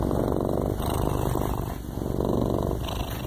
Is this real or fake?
real